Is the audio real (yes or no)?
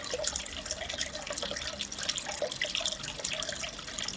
yes